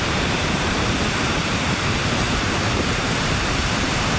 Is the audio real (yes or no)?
no